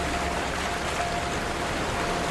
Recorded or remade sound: recorded